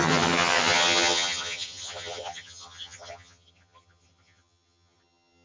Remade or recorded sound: remade